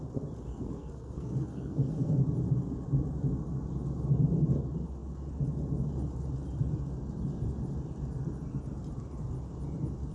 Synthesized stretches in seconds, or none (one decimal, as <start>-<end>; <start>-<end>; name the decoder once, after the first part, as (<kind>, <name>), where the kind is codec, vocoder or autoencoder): 0.5-2.2 (codec, SNAC)